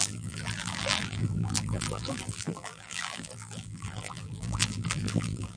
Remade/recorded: remade